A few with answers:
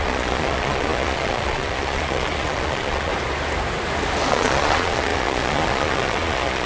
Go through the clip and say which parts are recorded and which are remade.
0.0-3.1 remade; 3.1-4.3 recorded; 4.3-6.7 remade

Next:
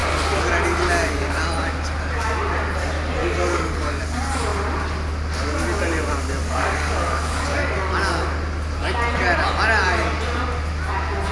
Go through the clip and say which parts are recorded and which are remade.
0.0-3.2 recorded; 3.2-4.0 remade; 4.0-6.4 recorded; 6.4-7.9 remade; 7.9-11.3 recorded

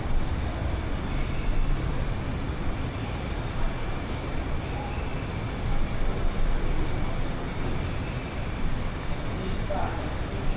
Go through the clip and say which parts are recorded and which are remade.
0.0-10.6 recorded

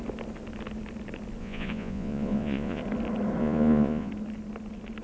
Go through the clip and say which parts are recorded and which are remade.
0.0-1.4 recorded; 1.4-2.8 remade; 2.8-3.4 recorded; 3.4-4.1 remade; 4.1-5.0 recorded